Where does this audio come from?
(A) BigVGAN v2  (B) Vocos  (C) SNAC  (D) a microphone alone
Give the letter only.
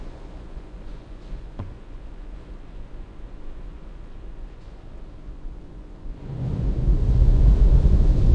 B